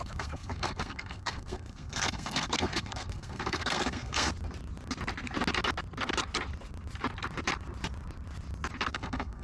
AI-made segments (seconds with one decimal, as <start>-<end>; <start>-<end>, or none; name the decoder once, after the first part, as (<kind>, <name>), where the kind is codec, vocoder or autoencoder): 0.0-4.3 (codec, SNAC); 8.9-9.4